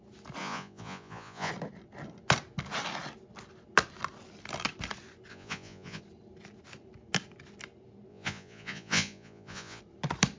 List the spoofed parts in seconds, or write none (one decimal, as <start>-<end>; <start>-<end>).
0.4-1.5; 5.3-6.0; 8.1-9.8